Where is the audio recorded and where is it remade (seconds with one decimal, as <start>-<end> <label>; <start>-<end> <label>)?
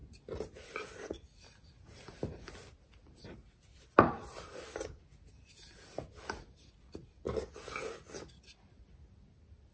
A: 0.0-9.7 recorded